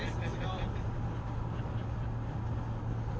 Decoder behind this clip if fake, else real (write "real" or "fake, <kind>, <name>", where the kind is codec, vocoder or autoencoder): real